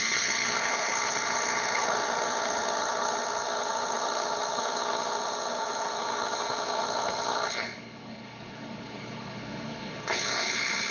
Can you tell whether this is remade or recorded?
remade